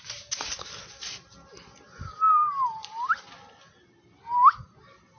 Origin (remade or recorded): recorded